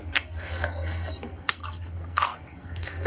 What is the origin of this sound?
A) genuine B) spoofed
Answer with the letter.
B